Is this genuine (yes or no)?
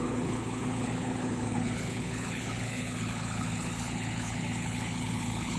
no